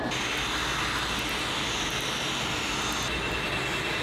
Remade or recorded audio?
recorded